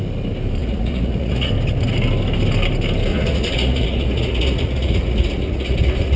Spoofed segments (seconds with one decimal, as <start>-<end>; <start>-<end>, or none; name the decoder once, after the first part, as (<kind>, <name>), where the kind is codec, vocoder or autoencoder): 0.6-1.5 (vocoder, Vocos); 3.1-6.2